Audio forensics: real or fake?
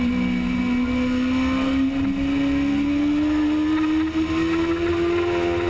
real